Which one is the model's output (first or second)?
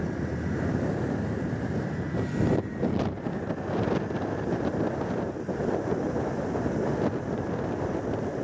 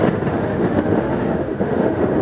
second